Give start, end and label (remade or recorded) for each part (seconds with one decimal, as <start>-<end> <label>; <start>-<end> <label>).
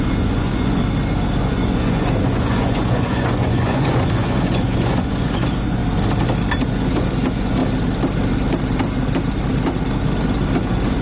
0.0-0.8 remade; 0.8-1.4 recorded; 1.4-5.8 remade; 5.8-6.6 recorded; 6.6-7.6 remade; 7.6-10.6 recorded; 10.6-11.0 remade